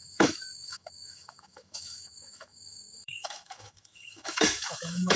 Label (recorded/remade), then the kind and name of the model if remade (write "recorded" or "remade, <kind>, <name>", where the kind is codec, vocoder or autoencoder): remade, autoencoder, DAC-VAE